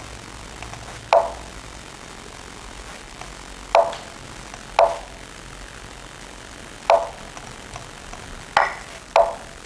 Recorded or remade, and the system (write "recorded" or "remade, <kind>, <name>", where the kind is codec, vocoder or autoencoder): recorded